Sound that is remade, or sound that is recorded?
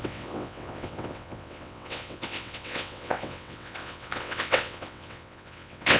remade